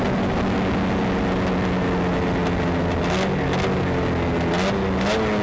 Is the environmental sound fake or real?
real